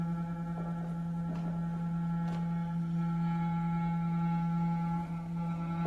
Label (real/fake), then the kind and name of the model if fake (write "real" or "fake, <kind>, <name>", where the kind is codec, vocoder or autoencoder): real